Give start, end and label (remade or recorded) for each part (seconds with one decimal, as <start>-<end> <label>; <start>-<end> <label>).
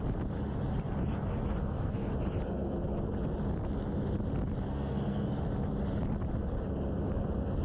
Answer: 0.0-1.6 recorded; 1.6-2.1 remade; 2.1-4.7 recorded; 4.7-5.4 remade; 5.4-7.6 recorded